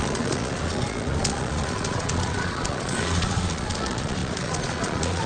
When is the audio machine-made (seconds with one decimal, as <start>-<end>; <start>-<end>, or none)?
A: 0.0-5.3